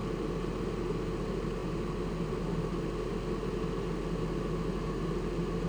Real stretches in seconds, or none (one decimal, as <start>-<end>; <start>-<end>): 0.0-5.7